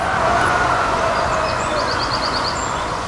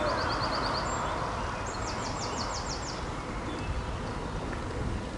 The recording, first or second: second